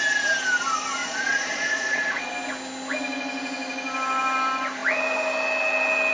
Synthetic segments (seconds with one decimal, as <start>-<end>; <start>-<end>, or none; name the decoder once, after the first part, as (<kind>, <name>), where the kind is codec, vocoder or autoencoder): 1.0-2.3 (vocoder, Vocos)